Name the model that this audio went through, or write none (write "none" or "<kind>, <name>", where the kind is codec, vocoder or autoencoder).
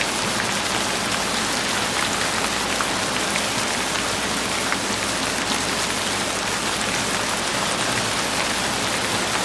none